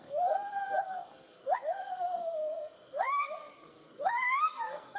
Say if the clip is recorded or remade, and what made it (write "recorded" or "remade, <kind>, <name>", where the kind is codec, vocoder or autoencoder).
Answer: remade, codec, SNAC